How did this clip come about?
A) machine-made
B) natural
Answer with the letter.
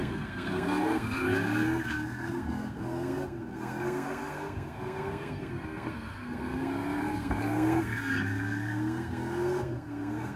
A